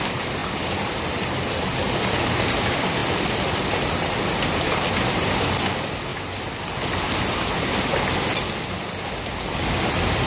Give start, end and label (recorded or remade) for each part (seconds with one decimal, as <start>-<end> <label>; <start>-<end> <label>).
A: 0.0-10.3 recorded